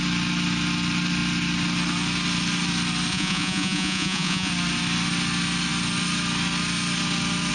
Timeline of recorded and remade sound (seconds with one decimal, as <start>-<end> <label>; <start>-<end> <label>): 0.0-3.1 recorded; 3.1-4.5 remade; 4.5-7.5 recorded